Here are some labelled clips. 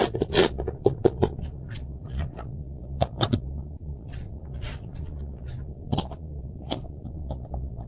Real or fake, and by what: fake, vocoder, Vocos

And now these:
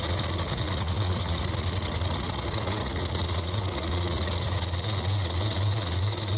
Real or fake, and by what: fake, vocoder, Vocos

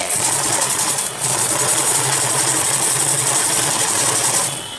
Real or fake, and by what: fake, vocoder, Vocos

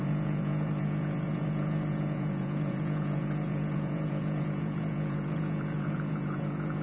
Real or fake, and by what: fake, vocoder, Vocos